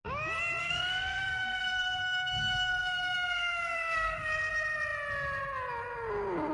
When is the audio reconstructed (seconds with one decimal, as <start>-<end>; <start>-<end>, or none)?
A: 0.6-4.5